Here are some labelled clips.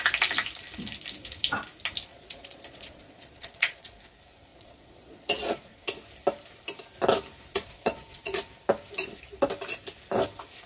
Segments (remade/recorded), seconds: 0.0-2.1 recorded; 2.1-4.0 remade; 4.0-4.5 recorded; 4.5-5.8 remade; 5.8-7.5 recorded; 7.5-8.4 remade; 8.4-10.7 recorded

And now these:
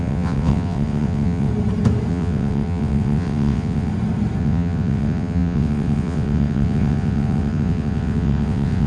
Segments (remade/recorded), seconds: 0.0-1.5 remade; 1.5-2.1 recorded; 2.1-3.9 remade; 3.9-4.4 recorded; 4.4-8.9 remade

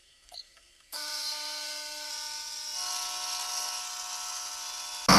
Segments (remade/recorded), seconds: 0.0-2.1 remade; 2.1-5.2 recorded

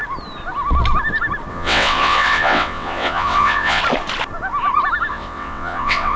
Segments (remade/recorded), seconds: 0.0-1.5 recorded; 1.5-3.8 remade; 3.8-5.1 recorded; 5.1-6.2 remade